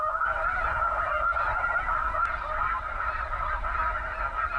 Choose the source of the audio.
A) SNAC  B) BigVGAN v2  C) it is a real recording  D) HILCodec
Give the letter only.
C